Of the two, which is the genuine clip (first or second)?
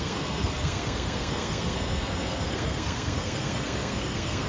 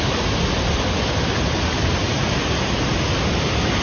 second